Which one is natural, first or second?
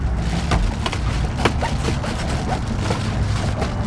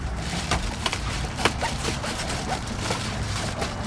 first